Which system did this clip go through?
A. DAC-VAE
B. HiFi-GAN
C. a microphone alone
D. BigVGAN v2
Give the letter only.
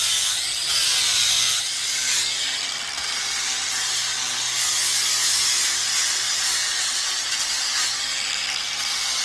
D